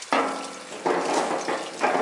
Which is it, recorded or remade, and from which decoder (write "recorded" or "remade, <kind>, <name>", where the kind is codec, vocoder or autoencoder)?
recorded